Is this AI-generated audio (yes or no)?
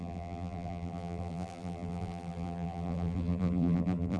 yes